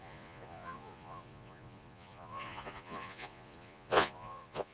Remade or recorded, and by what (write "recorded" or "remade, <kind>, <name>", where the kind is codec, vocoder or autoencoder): remade, vocoder, Vocos